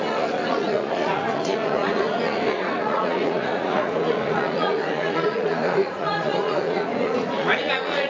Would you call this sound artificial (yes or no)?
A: yes